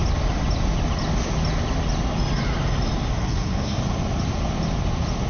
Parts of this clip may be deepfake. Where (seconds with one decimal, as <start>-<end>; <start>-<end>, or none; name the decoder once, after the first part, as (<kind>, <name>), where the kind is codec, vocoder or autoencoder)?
3.1-3.8 (codec, SNAC)